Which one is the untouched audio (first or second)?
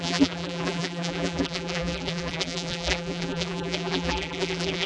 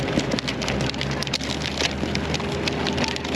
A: second